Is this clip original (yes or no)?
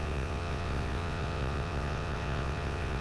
no